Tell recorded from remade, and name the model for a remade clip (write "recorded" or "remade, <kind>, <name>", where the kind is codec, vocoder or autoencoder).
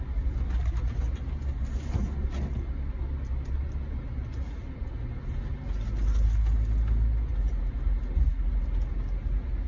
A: recorded